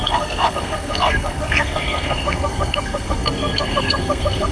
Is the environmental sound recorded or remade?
remade